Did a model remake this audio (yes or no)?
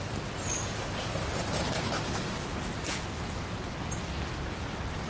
no